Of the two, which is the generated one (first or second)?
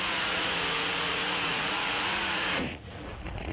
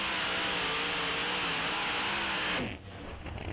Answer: first